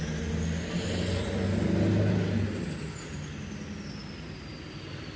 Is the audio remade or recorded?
recorded